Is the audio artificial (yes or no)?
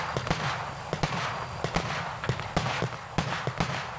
no